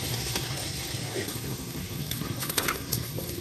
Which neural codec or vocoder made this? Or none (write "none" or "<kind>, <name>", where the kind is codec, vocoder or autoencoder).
codec, SNAC